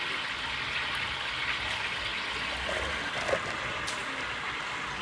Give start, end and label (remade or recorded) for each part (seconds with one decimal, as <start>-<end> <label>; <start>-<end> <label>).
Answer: 0.0-5.0 recorded